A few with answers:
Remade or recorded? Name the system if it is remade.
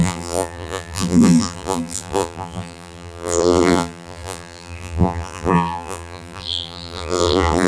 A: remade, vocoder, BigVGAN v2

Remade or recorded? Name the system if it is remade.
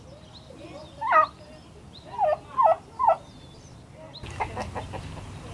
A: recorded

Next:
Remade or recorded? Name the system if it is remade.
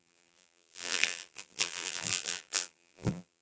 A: remade, vocoder, BigVGAN v2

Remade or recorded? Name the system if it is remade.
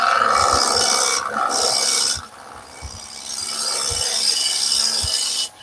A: recorded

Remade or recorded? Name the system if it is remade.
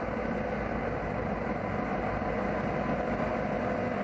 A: recorded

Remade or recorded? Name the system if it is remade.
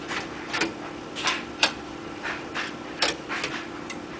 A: remade, vocoder, BigVGAN v2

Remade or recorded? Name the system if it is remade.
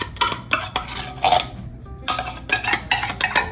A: recorded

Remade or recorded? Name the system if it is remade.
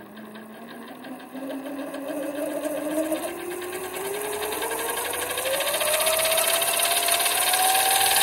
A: recorded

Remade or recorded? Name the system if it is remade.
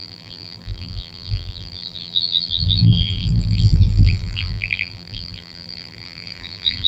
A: remade, vocoder, BigVGAN v2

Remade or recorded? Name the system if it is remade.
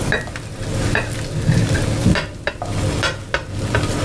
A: recorded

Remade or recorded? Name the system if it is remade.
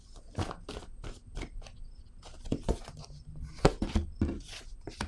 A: recorded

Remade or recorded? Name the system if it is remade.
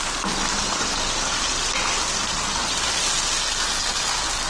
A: recorded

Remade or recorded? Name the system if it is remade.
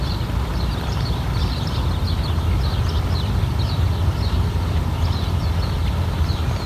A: recorded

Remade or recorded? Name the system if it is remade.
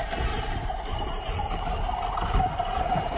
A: recorded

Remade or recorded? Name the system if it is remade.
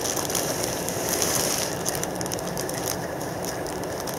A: remade, vocoder, BigVGAN v2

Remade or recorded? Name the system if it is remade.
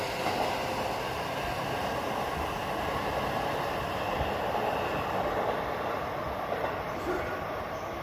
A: recorded